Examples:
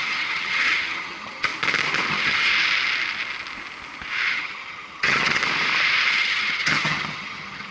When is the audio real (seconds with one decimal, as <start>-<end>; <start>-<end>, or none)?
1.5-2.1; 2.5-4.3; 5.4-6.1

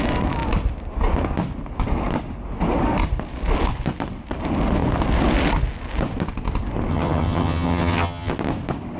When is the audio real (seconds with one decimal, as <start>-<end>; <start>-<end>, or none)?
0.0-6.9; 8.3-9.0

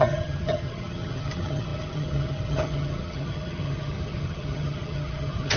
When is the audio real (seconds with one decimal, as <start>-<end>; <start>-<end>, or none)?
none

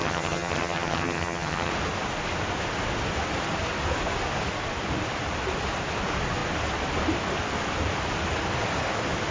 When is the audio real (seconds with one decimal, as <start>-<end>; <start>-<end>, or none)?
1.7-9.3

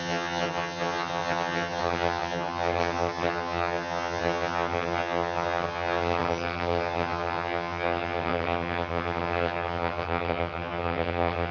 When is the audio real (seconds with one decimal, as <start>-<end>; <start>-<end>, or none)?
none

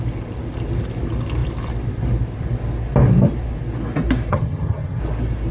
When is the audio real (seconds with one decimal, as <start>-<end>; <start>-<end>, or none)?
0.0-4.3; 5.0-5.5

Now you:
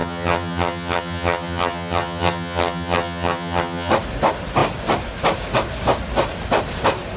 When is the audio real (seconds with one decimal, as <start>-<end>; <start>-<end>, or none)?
3.9-7.2